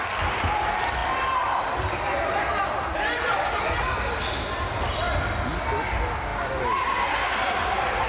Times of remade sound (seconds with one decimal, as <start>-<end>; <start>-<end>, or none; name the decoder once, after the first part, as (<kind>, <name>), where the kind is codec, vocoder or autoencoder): none